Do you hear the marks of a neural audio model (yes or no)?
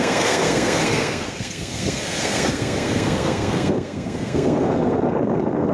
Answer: yes